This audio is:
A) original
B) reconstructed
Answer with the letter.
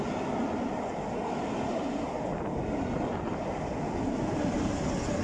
A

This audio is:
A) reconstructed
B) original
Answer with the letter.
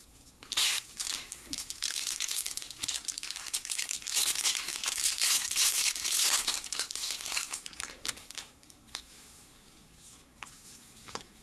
A